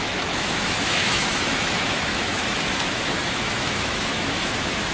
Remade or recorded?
remade